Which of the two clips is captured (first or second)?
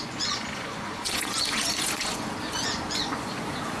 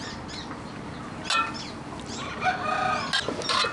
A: second